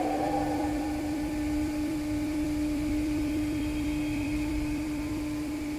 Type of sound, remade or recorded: remade